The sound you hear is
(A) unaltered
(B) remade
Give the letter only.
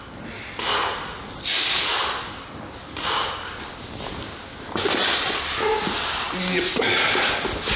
A